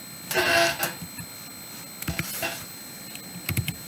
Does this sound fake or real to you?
real